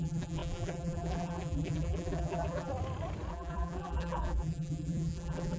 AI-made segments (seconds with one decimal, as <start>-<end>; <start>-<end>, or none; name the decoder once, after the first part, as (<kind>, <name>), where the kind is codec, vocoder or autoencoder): 0.0-2.7 (vocoder, BigVGAN v2); 3.3-5.6

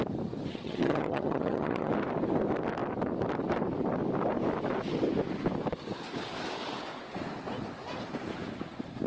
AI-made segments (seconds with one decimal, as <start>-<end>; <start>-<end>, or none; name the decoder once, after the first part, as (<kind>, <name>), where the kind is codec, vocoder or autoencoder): 0.6-1.9 (vocoder, HiFi-GAN)

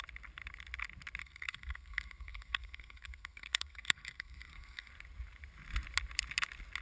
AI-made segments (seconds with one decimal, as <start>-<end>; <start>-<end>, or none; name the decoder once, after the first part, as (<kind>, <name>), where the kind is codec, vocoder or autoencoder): 1.2-4.9 (codec, SNAC)

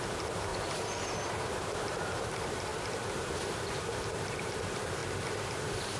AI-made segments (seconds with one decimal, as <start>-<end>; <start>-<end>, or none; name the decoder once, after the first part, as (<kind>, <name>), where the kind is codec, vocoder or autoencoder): 0.0-0.5 (vocoder, BigVGAN v2); 1.6-2.7; 3.6-5.0; 5.6-6.0

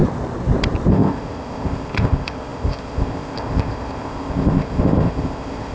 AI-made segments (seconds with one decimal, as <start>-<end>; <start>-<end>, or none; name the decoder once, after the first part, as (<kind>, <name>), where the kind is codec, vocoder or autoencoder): 0.9-5.7 (codec, ZipCodec)

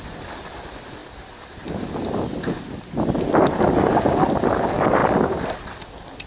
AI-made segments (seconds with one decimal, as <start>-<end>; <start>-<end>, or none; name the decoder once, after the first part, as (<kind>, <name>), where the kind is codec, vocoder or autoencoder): none

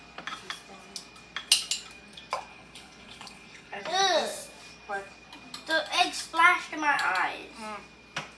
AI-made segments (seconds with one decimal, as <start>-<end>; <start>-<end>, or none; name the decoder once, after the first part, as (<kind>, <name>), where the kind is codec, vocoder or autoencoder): 2.5-3.8 (codec, HILCodec)